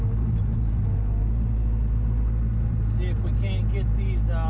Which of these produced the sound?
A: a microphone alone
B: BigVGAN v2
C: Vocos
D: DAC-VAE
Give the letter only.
A